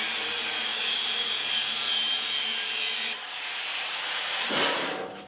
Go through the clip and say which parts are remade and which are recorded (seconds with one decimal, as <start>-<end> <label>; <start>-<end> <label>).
0.0-5.3 remade